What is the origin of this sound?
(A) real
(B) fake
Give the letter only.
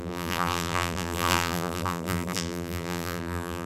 B